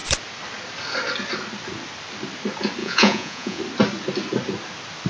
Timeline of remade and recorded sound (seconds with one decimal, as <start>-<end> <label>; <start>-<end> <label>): 0.0-2.8 recorded; 2.8-3.6 remade; 3.6-5.1 recorded